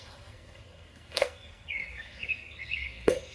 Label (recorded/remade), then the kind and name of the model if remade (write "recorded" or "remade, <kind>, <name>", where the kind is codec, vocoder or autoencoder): remade, codec, SNAC